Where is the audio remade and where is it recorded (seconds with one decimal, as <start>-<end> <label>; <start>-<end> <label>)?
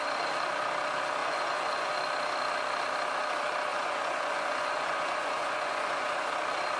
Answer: 0.0-1.2 recorded; 1.2-1.9 remade; 1.9-3.7 recorded; 3.7-6.3 remade; 6.3-6.8 recorded